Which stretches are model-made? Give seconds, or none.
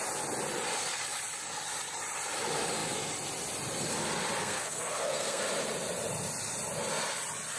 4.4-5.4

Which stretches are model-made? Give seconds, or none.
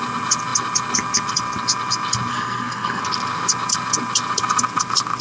2.3-3.0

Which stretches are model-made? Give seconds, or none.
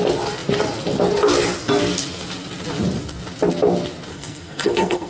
4.1-5.1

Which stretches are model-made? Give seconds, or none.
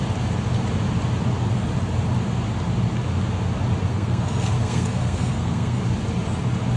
3.9-5.8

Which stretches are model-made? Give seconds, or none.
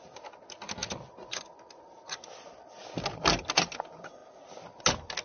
none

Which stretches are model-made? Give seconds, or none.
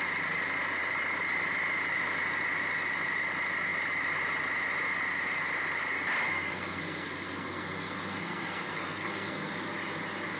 6.3-9.5